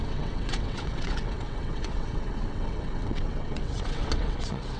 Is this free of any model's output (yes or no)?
no